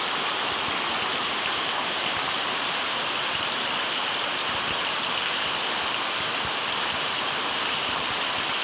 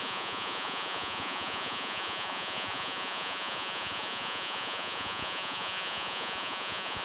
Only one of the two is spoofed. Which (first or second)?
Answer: second